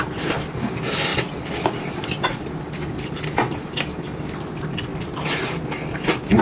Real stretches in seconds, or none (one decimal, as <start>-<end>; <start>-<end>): 0.0-6.4